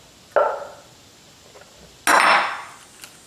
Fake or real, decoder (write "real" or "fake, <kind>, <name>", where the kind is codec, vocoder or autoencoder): real